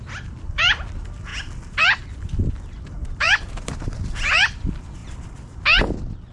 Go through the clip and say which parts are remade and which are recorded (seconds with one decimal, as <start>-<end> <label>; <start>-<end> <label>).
0.0-5.0 remade; 5.0-6.3 recorded